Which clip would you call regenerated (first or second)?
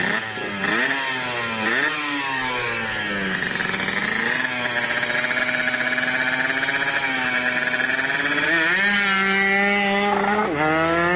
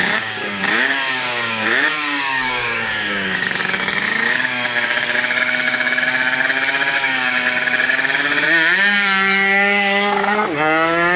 second